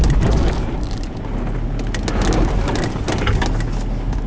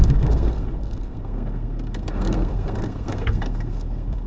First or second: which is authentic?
first